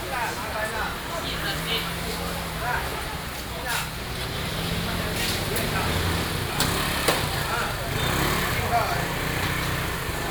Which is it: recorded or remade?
recorded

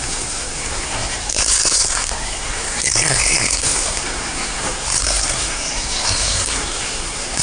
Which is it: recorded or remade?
remade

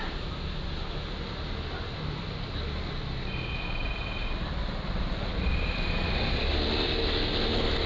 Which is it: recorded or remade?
recorded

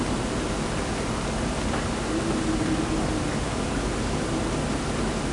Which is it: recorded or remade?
recorded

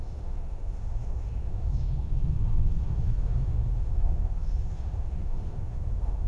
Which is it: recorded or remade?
remade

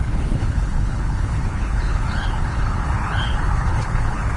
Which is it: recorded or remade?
remade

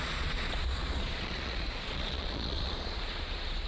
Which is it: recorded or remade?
remade